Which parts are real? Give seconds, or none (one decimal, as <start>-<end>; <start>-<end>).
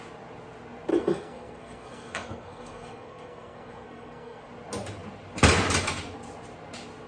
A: 0.0-0.9; 4.5-7.1